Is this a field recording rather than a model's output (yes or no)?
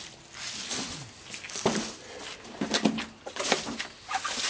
yes